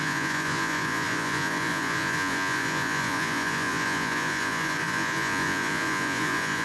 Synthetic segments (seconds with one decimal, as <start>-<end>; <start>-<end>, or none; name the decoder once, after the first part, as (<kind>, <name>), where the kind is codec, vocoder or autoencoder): 0.0-6.6 (vocoder, Vocos)